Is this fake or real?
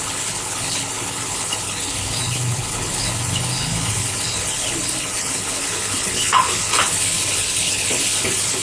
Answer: fake